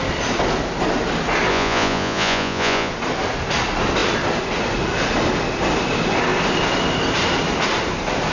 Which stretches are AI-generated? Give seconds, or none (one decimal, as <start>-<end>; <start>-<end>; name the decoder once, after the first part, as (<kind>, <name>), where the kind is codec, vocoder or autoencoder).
1.5-2.9 (vocoder, Vocos)